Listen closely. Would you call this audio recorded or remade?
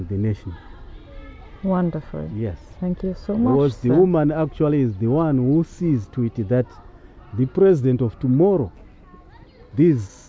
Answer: recorded